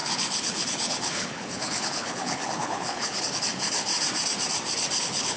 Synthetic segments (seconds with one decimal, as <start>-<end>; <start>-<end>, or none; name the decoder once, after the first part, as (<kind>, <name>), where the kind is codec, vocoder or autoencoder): 0.0-3.9 (codec, HILCodec); 5.0-5.4